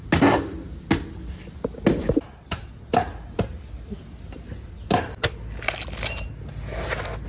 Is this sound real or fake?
real